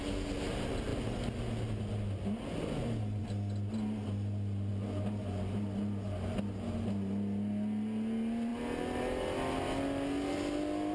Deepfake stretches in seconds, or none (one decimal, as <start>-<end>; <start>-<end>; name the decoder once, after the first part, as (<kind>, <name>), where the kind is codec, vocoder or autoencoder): none

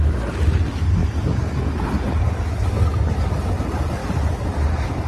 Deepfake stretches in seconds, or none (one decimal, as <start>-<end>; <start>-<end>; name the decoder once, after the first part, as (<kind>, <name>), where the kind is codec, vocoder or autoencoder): none

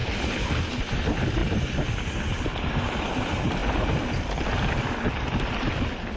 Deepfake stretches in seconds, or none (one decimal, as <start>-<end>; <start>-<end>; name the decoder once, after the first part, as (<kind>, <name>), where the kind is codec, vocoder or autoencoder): 0.8-1.4 (vocoder, BigVGAN v2); 3.1-3.6

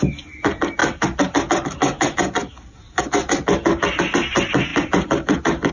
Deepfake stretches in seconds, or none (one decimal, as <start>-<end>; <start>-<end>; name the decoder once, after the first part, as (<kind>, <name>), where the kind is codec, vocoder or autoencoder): 4.7-5.7 (vocoder, BigVGAN v2)